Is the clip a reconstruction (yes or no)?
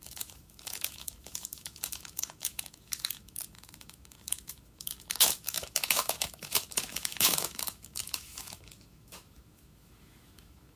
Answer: yes